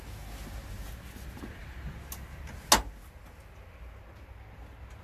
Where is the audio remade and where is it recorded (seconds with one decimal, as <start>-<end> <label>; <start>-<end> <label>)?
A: 0.0-5.0 recorded